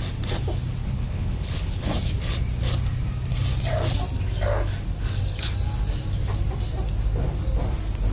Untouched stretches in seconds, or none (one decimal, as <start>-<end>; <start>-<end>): 0.0-0.8; 1.9-8.1